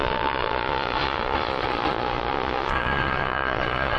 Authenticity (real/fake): fake